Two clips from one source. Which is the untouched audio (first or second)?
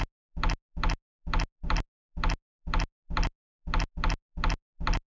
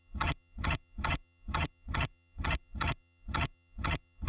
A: first